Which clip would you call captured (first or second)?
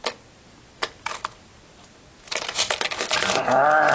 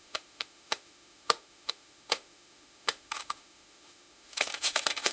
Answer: first